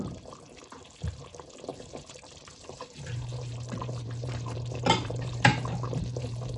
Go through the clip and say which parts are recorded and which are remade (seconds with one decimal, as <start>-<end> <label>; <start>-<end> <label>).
0.0-6.6 remade